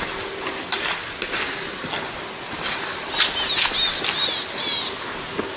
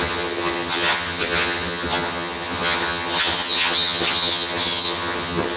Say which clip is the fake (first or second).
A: second